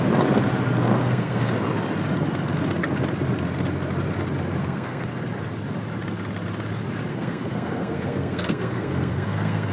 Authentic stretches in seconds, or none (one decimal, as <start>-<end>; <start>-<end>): 0.0-1.0; 1.5-4.6; 5.1-7.1

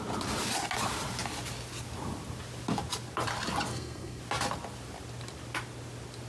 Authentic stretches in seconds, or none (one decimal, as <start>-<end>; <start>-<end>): 0.0-3.7; 4.2-6.3

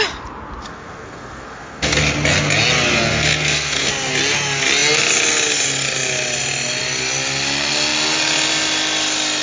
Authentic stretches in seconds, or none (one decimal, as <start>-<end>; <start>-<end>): 0.0-0.6; 2.0-3.1; 3.9-9.4

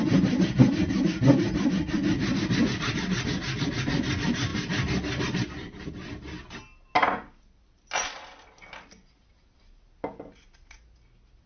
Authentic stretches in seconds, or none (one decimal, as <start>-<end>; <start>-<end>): 0.0-11.5

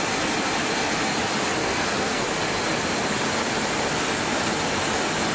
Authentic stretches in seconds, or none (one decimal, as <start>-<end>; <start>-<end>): 0.0-1.6; 2.2-5.3